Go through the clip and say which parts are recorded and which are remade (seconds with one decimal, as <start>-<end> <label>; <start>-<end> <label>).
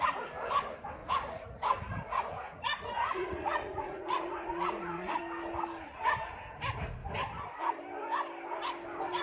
0.0-1.0 recorded; 1.0-5.2 remade; 5.2-9.2 recorded